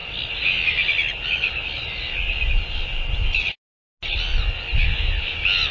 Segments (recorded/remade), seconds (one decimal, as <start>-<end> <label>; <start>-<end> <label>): 0.0-5.7 recorded